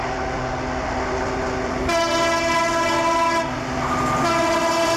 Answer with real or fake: real